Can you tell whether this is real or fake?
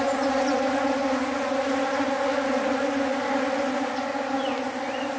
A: real